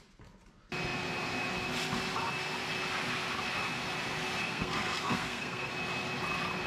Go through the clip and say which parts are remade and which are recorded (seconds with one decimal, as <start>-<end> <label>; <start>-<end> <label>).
0.0-4.4 recorded; 4.4-5.7 remade; 5.7-6.7 recorded